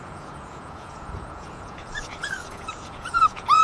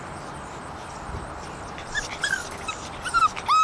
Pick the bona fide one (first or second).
second